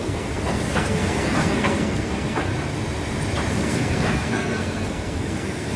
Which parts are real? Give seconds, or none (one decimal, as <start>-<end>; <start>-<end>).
2.5-3.5